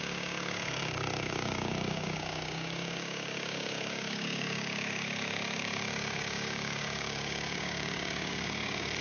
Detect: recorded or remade remade